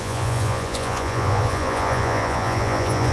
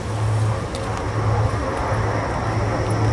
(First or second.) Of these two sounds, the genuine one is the second